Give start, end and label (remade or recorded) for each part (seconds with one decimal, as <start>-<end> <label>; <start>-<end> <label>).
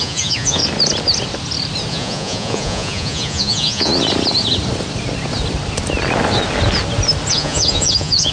0.0-0.6 remade; 0.6-1.9 recorded; 1.9-3.9 remade; 3.9-7.3 recorded; 7.3-8.3 remade